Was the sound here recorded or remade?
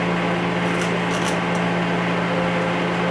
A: recorded